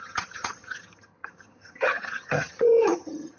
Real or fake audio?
fake